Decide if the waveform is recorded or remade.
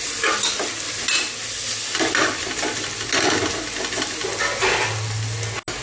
recorded